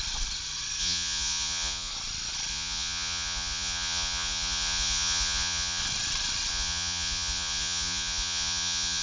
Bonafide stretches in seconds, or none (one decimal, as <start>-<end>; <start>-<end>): 0.0-0.8; 1.9-2.5; 5.8-6.5